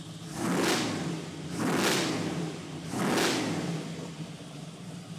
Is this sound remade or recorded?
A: recorded